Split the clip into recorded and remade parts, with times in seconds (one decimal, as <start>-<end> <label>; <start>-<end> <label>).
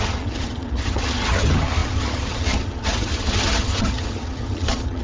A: 0.0-5.0 remade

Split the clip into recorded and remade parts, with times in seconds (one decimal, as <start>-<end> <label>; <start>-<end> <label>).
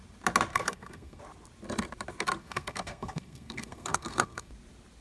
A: 0.0-0.5 recorded; 0.5-1.2 remade; 1.2-2.4 recorded; 2.4-4.5 remade; 4.5-5.0 recorded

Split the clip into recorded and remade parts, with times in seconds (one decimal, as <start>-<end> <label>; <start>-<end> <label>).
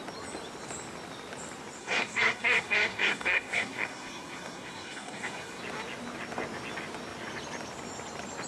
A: 0.0-1.8 recorded; 1.8-5.6 remade; 5.6-8.5 recorded